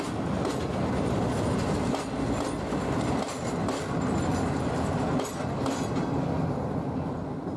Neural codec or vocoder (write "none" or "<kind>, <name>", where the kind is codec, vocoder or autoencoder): none